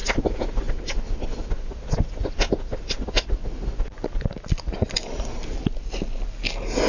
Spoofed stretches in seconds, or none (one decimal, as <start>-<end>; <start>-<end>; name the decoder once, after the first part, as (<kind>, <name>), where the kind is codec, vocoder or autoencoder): none